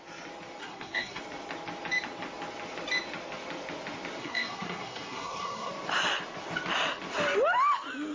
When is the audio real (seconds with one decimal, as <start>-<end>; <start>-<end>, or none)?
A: 0.0-0.6; 1.2-4.2; 5.7-8.1